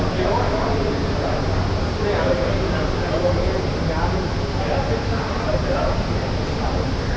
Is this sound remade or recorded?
recorded